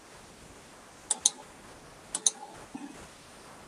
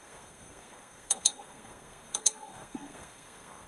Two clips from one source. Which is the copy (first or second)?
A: second